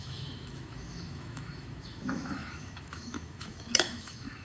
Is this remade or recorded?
remade